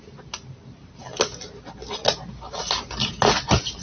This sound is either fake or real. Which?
real